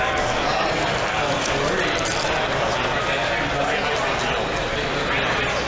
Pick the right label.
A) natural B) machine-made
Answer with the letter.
A